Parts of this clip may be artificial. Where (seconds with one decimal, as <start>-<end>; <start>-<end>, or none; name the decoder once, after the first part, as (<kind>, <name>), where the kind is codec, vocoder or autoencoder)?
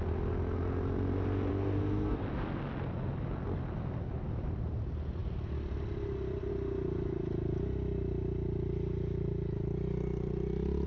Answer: 1.5-2.2 (codec, SNAC)